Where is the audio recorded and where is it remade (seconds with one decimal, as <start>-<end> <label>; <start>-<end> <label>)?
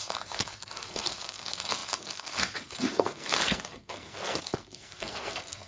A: 0.0-5.7 remade